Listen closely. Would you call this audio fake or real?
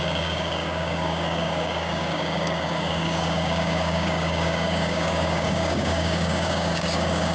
fake